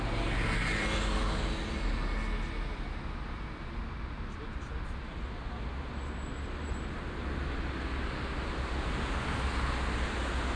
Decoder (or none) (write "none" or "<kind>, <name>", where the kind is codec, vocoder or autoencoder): none